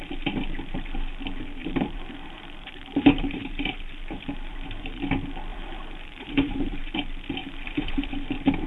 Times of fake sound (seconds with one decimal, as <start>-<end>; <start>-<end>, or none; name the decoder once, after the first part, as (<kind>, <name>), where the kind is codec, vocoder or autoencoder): 1.6-5.0 (vocoder, BigVGAN v2); 5.5-6.8; 7.4-8.1